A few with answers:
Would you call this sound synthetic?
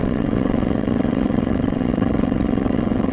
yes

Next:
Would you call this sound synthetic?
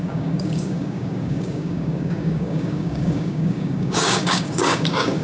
yes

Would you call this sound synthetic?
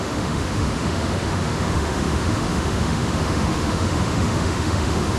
yes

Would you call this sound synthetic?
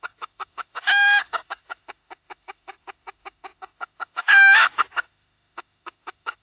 yes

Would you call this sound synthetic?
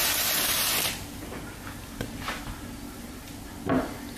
no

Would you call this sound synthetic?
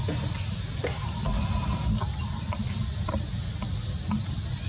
no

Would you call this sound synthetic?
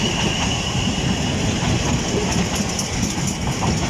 no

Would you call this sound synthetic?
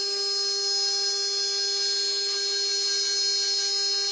no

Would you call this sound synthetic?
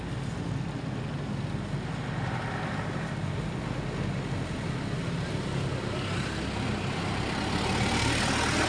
no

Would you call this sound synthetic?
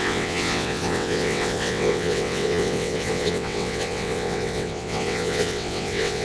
yes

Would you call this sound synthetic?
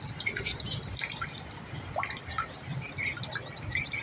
no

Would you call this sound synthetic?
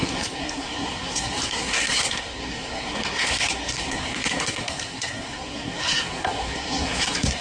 yes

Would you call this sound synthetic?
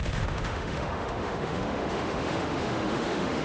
yes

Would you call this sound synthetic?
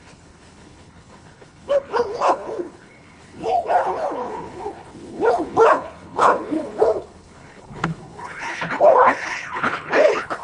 yes